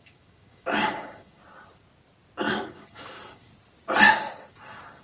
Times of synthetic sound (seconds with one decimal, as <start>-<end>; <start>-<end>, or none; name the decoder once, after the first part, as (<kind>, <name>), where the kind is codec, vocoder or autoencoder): 0.0-1.4 (codec, DAC); 2.7-3.5; 4.5-5.0